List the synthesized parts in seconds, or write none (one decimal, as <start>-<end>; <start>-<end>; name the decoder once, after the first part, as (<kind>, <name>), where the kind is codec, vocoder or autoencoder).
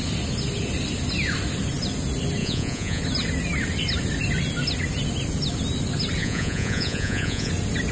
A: 2.4-3.0 (vocoder, Vocos); 6.2-7.5